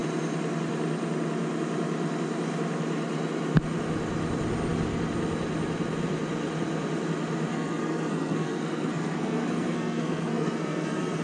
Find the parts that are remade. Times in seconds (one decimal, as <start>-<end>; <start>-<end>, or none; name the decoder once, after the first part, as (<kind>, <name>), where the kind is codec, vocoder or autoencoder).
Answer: 7.5-11.2 (codec, SNAC)